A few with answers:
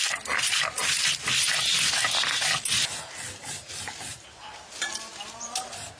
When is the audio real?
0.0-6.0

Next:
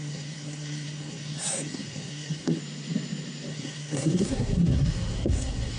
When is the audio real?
2.6-3.5

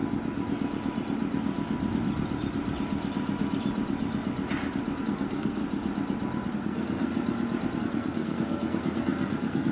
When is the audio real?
0.0-5.0; 5.6-6.5; 7.1-7.8

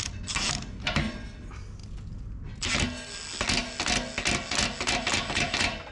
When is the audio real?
0.0-5.9

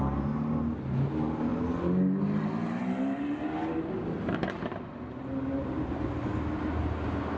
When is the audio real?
0.0-7.4

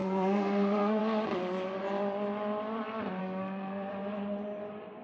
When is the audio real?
1.0-3.2; 3.9-5.0

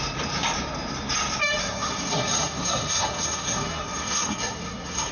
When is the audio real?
0.0-1.6